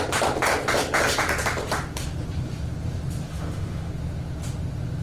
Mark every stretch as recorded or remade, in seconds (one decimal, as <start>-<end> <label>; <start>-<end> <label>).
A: 0.0-3.3 recorded; 3.3-3.9 remade; 3.9-5.0 recorded